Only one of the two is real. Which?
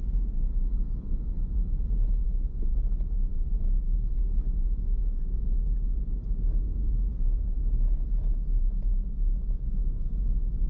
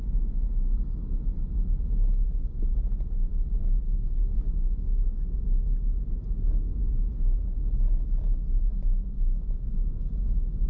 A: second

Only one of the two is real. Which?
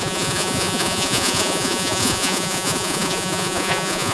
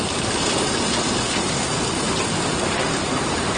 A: second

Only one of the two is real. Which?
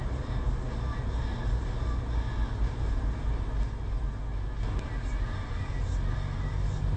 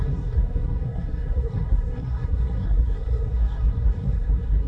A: first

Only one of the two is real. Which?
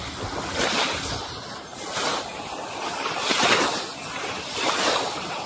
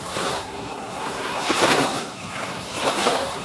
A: first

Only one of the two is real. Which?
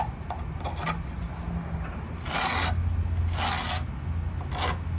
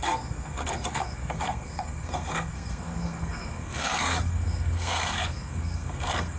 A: first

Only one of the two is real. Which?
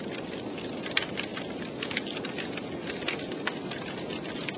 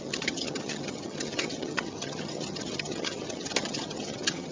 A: first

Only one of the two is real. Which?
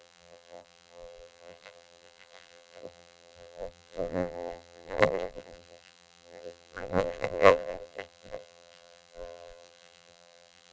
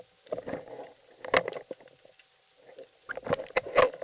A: second